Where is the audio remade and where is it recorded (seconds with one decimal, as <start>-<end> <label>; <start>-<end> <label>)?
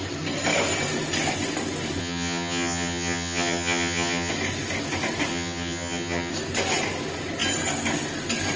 0.0-2.0 recorded; 2.0-4.3 remade; 4.3-5.3 recorded; 5.3-6.3 remade; 6.3-8.6 recorded